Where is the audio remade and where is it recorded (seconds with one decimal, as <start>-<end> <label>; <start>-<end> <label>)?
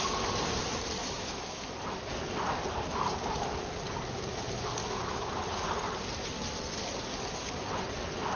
0.0-1.0 recorded; 1.0-1.7 remade; 1.7-4.8 recorded; 4.8-5.3 remade; 5.3-8.4 recorded